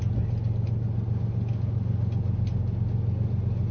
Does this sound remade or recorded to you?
recorded